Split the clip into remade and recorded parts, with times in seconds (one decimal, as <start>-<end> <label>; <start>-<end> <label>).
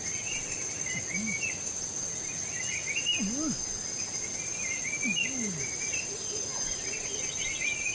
0.0-5.9 recorded; 5.9-6.9 remade; 6.9-7.9 recorded